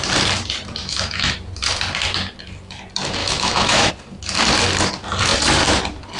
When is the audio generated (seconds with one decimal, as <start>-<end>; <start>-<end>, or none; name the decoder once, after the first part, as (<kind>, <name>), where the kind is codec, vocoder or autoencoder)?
0.8-1.3 (autoencoder, DAC-VAE); 3.2-3.9